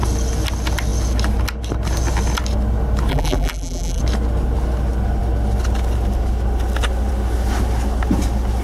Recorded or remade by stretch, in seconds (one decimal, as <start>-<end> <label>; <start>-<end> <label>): 0.0-3.1 recorded; 3.1-4.0 remade; 4.0-8.6 recorded